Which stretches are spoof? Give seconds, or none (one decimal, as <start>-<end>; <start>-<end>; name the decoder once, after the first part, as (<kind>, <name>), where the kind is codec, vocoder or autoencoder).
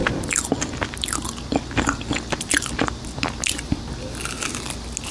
none